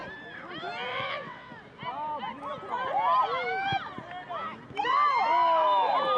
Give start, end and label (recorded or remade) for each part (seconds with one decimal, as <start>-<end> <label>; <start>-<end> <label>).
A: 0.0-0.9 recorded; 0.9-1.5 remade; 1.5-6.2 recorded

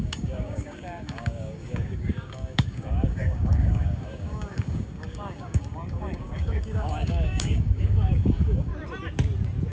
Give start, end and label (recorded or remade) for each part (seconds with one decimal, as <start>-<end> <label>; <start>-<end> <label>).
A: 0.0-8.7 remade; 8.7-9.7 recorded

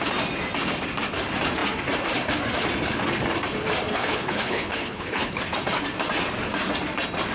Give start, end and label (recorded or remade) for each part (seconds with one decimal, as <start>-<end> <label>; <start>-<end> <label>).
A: 0.0-3.9 recorded; 3.9-5.4 remade; 5.4-7.3 recorded